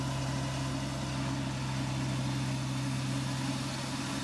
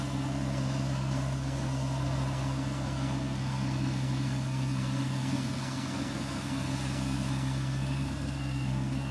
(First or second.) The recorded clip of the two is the first